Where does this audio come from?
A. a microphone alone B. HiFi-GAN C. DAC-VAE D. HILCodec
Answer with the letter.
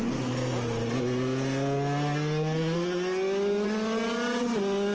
A